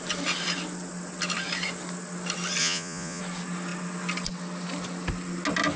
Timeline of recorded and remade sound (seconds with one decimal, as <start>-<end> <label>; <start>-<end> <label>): 0.0-2.6 recorded; 2.6-3.2 remade; 3.2-5.8 recorded